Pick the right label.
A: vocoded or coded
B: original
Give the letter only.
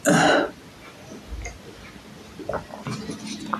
B